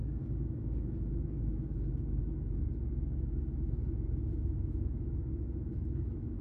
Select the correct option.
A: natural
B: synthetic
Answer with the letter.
B